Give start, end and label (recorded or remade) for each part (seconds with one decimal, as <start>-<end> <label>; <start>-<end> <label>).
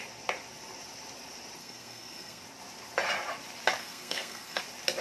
0.0-1.6 recorded; 1.6-2.4 remade; 2.4-3.8 recorded; 3.8-4.6 remade; 4.6-5.0 recorded